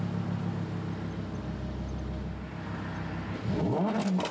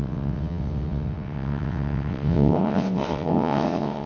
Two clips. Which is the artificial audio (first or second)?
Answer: second